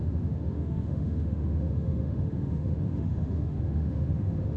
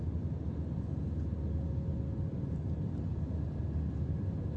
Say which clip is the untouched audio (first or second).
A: second